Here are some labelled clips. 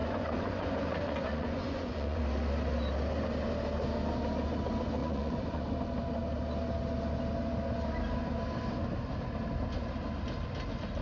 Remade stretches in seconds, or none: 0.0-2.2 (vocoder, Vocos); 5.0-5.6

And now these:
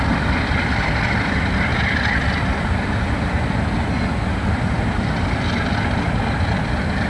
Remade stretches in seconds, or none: none

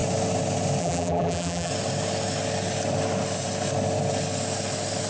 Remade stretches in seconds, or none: 0.8-1.7 (vocoder, BigVGAN v2)